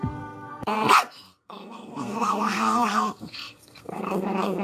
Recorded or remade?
remade